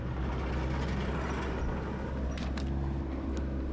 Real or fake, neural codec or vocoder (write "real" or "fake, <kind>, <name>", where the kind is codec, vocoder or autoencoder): real